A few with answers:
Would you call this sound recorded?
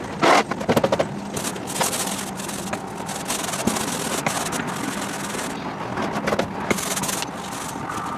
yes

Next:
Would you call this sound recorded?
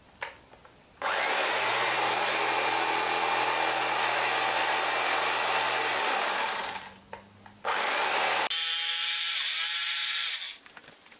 yes